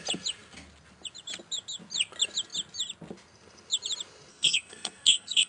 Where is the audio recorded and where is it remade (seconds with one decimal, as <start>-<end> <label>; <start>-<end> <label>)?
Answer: 0.0-4.3 recorded; 4.3-5.5 remade